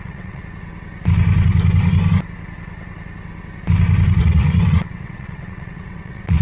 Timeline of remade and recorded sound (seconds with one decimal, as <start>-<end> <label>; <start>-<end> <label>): 0.0-0.4 remade; 0.4-4.2 recorded; 4.2-6.4 remade